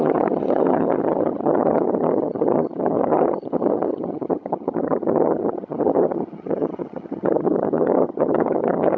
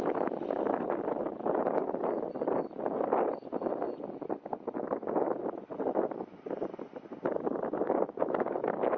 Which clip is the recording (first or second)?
second